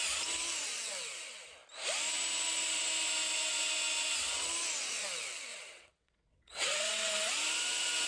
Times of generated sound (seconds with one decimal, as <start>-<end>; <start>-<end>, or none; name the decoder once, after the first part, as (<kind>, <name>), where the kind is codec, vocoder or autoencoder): 5.5-7.1 (vocoder, WaveNeXt)